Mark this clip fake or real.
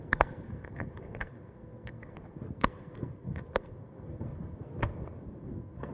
fake